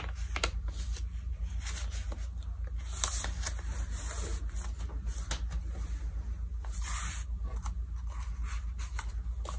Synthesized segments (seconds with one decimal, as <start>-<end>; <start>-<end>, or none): none